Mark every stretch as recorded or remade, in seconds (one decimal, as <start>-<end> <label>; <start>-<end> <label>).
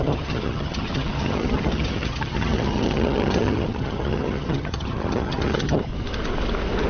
0.0-5.9 remade; 5.9-6.9 recorded